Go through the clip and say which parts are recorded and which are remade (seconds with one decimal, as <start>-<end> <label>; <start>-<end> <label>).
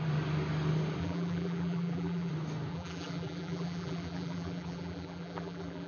0.0-1.0 recorded; 1.0-2.3 remade; 2.3-2.7 recorded; 2.7-5.9 remade